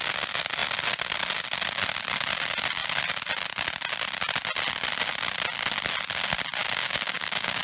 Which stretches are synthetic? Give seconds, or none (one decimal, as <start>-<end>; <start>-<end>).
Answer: 6.6-7.6